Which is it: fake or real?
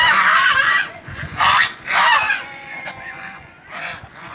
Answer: fake